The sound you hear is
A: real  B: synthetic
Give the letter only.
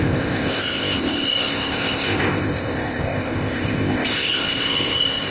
B